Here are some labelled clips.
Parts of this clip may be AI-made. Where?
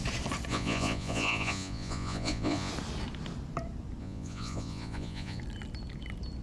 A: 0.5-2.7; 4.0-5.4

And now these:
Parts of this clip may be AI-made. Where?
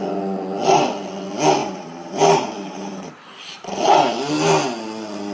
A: 1.6-3.8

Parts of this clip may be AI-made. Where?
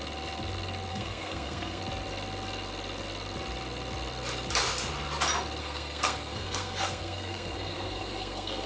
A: 0.9-1.8; 5.6-8.7